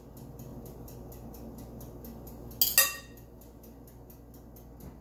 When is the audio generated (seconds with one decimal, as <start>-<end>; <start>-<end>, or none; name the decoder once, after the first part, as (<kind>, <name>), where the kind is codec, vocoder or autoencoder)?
none

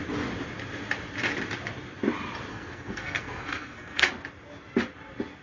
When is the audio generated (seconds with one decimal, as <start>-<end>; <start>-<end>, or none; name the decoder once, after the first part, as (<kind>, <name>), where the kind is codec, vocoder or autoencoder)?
2.5-4.1 (codec, SNAC)

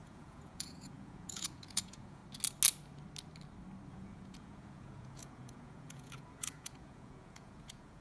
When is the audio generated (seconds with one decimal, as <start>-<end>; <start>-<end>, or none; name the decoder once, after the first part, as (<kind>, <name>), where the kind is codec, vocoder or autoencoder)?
0.0-2.2 (vocoder, Vocos); 3.9-8.0

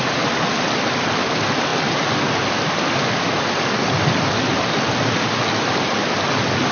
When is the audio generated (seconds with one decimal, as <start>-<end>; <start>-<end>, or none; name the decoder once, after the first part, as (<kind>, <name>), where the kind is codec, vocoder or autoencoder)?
none

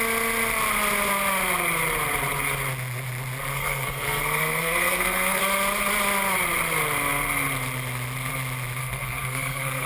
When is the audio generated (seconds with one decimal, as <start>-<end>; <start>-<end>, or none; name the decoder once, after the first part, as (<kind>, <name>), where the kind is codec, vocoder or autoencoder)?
3.5-5.4 (codec, SNAC); 8.8-9.9